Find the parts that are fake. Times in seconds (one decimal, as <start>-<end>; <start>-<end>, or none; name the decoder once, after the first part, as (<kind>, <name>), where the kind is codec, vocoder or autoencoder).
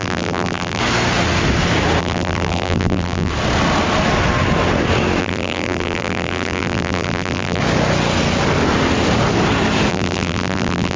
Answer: 0.0-0.8 (vocoder, BigVGAN v2); 2.0-3.3; 5.2-7.6; 9.9-11.0